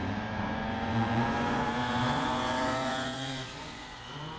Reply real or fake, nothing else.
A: fake